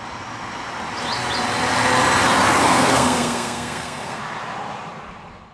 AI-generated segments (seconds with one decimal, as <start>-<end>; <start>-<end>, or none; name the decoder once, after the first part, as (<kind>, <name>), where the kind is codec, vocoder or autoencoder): 2.6-4.2 (codec, SNAC)